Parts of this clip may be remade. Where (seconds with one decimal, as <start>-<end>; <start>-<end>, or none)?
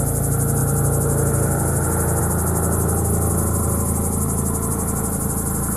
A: none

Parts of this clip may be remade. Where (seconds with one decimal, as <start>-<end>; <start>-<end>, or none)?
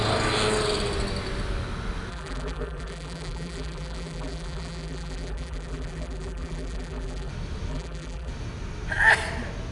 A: 2.1-7.3; 7.7-8.3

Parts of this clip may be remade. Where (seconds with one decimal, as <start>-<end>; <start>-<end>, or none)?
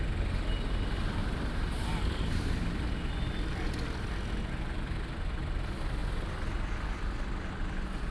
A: 1.2-4.4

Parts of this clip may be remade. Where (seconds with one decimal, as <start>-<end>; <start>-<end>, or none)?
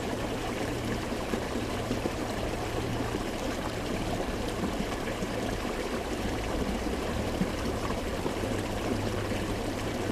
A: 0.0-10.1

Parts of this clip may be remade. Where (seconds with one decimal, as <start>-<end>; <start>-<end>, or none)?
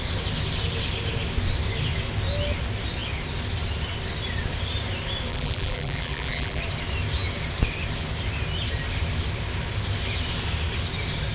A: 5.3-6.6